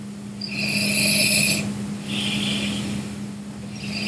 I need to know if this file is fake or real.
real